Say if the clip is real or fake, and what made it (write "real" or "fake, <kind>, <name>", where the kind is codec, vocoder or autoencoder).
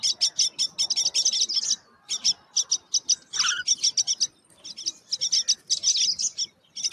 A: real